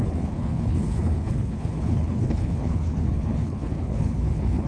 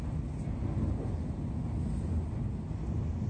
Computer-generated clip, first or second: first